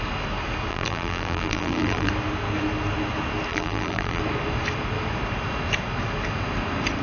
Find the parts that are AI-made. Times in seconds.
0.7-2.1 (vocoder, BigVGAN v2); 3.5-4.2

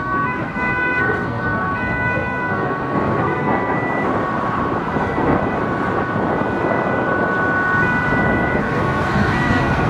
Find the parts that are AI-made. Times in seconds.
0.0-3.8 (codec, SNAC); 5.0-5.4; 8.6-9.9

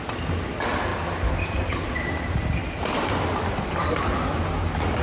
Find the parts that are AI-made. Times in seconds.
none

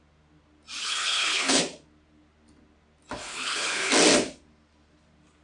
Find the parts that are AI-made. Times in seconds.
0.8-1.6 (codec, HILCodec); 3.2-3.9

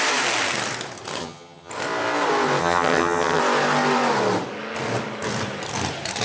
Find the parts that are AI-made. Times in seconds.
1.2-1.7 (vocoder, HiFi-GAN); 2.6-3.4

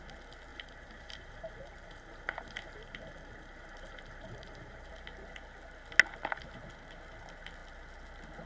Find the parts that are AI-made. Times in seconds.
0.5-4.9 (vocoder, BigVGAN v2)

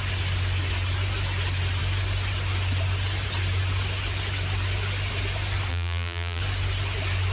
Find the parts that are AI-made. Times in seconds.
5.7-6.4 (vocoder, BigVGAN v2)